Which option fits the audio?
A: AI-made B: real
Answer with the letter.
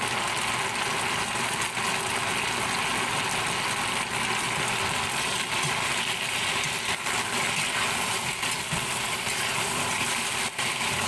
B